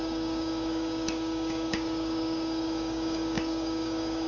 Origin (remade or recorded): remade